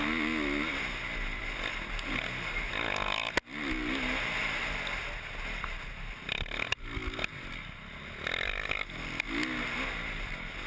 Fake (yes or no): no